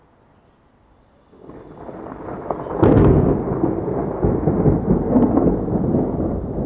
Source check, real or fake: real